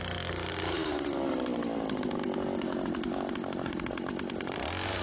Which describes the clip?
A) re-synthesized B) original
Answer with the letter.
B